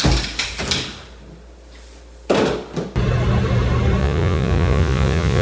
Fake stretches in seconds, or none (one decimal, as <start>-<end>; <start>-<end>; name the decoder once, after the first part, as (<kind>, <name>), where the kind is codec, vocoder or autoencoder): 4.0-5.4 (vocoder, Vocos)